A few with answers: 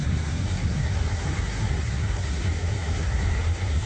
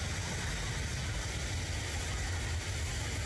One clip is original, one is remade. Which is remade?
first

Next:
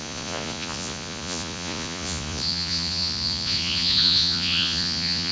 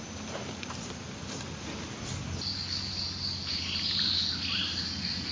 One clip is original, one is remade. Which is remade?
first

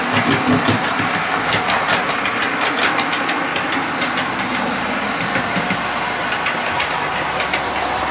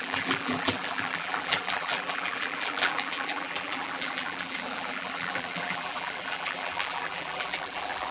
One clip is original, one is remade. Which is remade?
second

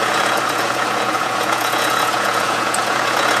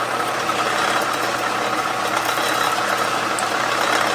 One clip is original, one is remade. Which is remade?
first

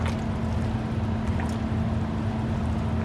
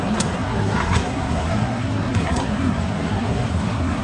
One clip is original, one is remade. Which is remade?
second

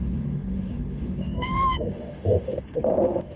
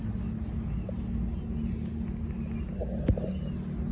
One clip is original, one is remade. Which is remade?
first